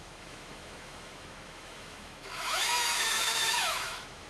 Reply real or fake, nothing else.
fake